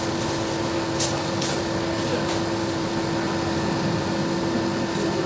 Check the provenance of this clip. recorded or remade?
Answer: recorded